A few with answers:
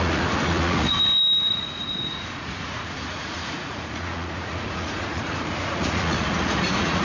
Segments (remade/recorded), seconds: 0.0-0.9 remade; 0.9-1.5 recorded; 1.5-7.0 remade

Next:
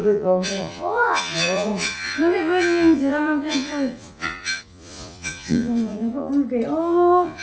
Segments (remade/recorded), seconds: 0.0-6.3 remade; 6.3-6.8 recorded; 6.8-7.4 remade

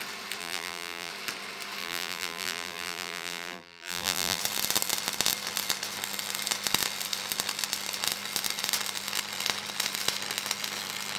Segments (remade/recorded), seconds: 0.0-0.4 recorded; 0.4-1.1 remade; 1.1-1.8 recorded; 1.8-4.4 remade; 4.4-11.2 recorded

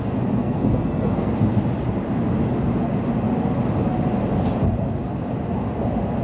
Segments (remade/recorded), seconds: 0.0-0.4 recorded; 0.4-1.3 remade; 1.3-6.2 recorded

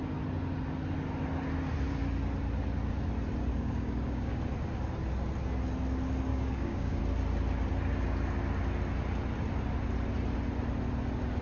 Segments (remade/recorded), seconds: 0.0-3.5 recorded; 3.5-4.4 remade; 4.4-6.3 recorded; 6.3-7.0 remade; 7.0-11.4 recorded

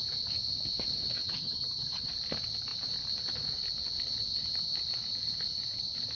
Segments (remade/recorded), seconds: 0.0-1.2 recorded; 1.2-2.1 remade; 2.1-6.2 recorded